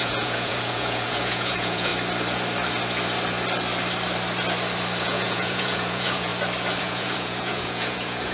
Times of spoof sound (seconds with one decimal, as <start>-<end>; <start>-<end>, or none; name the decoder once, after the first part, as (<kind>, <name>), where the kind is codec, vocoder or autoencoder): 0.0-1.9 (vocoder, Vocos); 5.0-6.3; 6.8-8.3